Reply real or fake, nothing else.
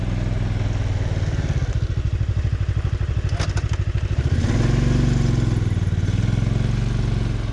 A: real